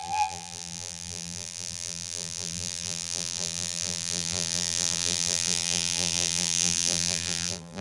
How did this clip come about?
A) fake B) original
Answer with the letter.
A